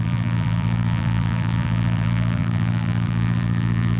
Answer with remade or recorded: remade